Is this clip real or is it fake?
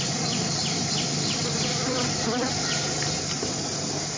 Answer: real